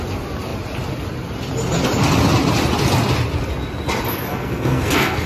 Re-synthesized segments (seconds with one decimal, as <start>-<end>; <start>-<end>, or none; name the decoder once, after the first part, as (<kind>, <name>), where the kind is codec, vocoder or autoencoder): 4.3-5.3 (codec, SNAC)